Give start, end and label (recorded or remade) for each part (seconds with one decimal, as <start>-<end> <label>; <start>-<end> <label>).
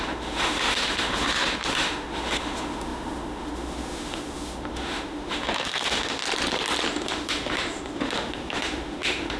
0.0-6.2 remade; 6.2-6.9 recorded; 6.9-9.4 remade